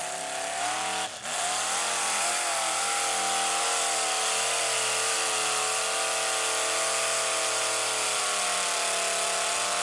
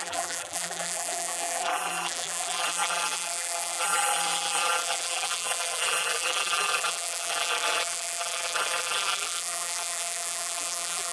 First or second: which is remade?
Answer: second